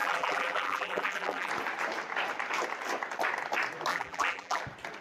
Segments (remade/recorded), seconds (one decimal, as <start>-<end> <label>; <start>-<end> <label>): 0.0-1.5 remade; 1.5-3.9 recorded; 3.9-4.6 remade; 4.6-5.0 recorded